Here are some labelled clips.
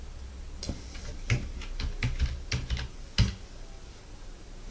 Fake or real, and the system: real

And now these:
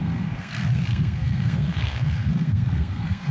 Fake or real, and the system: fake, codec, SNAC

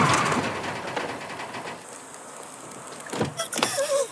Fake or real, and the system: real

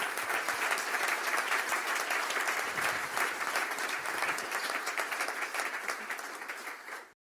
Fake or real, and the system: fake, vocoder, BigVGAN v2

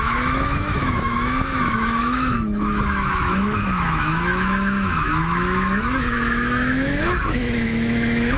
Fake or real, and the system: fake, autoencoder, DAC-VAE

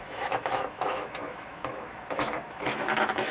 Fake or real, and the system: fake, autoencoder, DAC-VAE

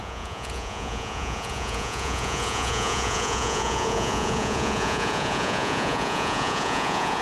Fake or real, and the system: fake, vocoder, Vocos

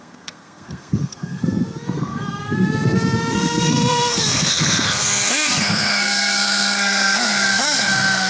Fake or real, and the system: fake, codec, SNAC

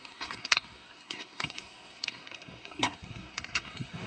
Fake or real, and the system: fake, codec, SNAC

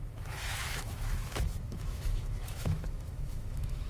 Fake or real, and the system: fake, autoencoder, DAC-VAE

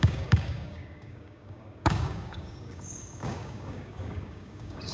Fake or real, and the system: fake, codec, DAC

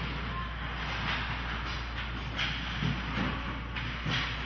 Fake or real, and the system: real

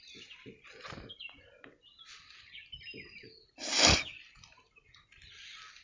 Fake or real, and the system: real